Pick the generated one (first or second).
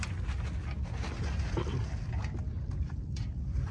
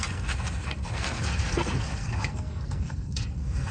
second